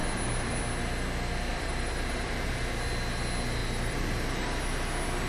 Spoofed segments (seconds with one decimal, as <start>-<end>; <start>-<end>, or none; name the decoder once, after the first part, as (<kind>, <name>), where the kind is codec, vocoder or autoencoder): 0.0-0.6 (vocoder, BigVGAN v2); 1.5-2.5; 3.6-4.6